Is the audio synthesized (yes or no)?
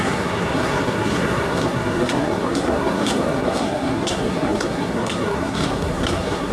yes